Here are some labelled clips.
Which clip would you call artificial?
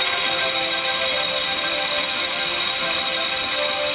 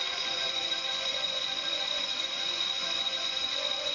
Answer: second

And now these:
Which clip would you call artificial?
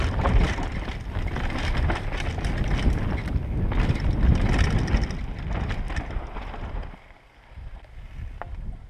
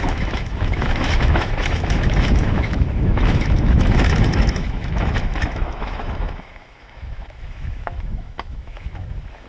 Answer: second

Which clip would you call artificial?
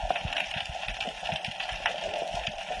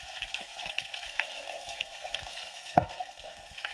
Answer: second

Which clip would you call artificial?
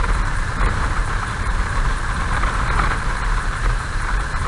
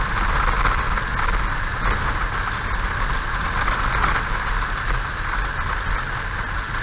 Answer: first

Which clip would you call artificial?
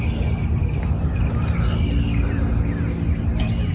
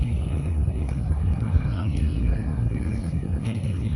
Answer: second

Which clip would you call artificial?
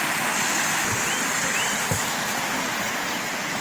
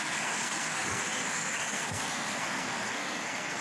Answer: second